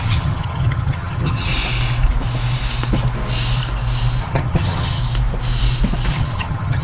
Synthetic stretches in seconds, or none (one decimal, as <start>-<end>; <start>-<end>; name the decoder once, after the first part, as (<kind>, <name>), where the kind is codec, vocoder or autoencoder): 0.0-1.5 (vocoder, HiFi-GAN); 4.2-5.0; 6.1-6.8